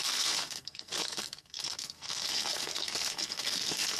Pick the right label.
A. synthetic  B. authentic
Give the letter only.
A